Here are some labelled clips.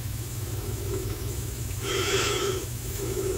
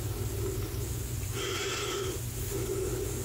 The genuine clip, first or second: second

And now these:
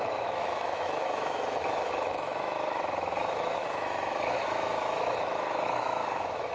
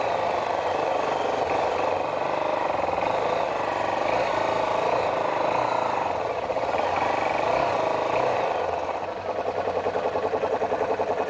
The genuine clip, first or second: second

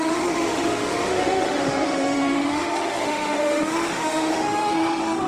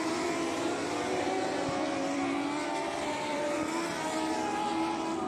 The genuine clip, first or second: second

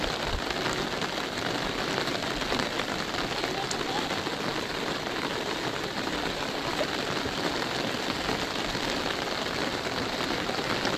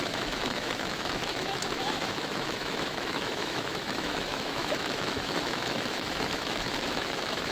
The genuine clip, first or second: first